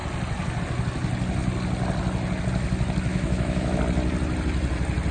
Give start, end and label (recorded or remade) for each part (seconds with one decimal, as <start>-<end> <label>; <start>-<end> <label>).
0.0-3.1 recorded; 3.1-3.8 remade; 3.8-5.1 recorded